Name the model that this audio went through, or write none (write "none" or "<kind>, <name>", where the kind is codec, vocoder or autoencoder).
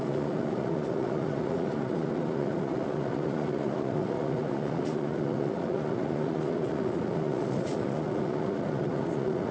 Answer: vocoder, Vocos